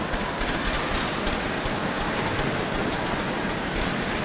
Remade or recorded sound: recorded